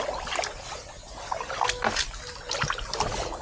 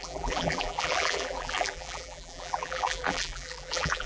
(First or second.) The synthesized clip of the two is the second